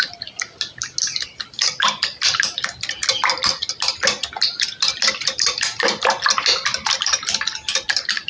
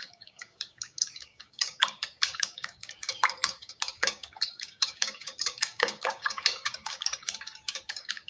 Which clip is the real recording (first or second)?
first